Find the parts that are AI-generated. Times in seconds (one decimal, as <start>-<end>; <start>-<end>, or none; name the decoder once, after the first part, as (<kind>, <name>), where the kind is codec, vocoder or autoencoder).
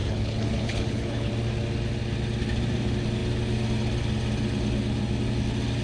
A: 0.0-1.3 (codec, HILCodec)